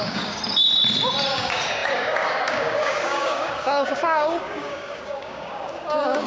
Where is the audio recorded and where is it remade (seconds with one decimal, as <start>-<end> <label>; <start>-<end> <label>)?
0.0-0.4 remade; 0.4-1.3 recorded; 1.3-6.3 remade